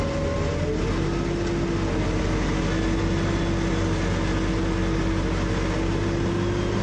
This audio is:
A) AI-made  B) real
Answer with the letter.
B